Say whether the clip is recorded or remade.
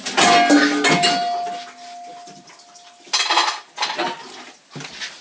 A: recorded